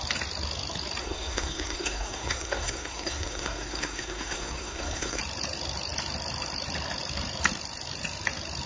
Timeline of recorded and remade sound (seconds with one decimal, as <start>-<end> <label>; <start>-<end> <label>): 0.0-1.0 recorded; 1.0-5.2 remade; 5.2-8.7 recorded